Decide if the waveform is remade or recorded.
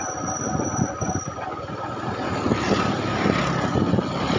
recorded